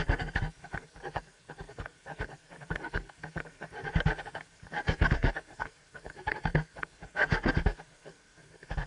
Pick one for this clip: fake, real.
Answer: fake